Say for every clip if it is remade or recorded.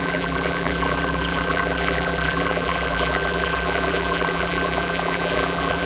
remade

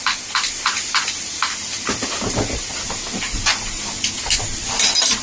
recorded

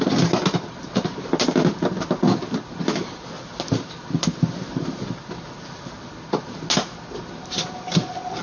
recorded